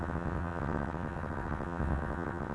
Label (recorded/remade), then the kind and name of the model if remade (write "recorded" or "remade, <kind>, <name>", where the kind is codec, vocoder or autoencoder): remade, vocoder, WaveNeXt